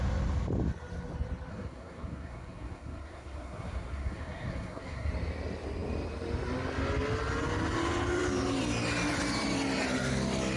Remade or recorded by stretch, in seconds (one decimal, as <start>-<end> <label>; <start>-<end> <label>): 0.0-1.5 recorded; 1.5-5.1 remade; 5.1-10.6 recorded